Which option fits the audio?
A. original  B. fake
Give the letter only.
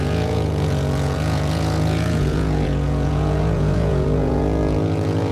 B